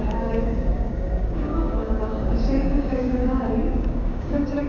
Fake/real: fake